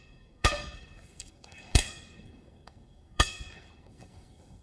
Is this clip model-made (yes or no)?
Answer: yes